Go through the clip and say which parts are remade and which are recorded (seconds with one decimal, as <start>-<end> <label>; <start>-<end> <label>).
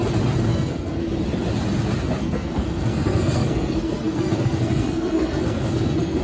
0.0-0.5 recorded; 0.5-1.0 remade; 1.0-2.2 recorded; 2.2-6.2 remade